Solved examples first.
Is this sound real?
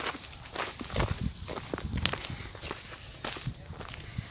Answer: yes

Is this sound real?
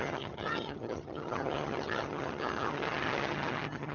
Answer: no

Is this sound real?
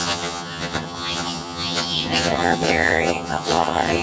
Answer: no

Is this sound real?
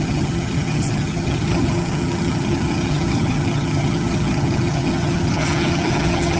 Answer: no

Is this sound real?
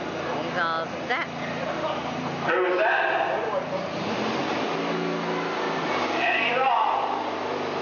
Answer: yes